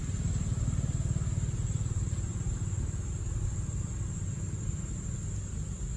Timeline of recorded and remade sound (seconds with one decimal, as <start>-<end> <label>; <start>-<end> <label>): 0.0-6.0 recorded